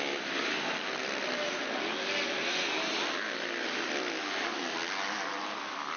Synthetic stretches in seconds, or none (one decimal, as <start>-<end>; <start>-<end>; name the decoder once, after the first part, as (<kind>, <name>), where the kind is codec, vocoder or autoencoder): none